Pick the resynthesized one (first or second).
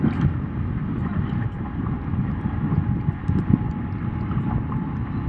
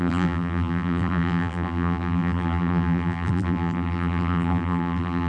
second